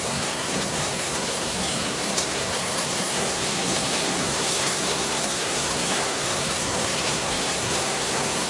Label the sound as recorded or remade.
remade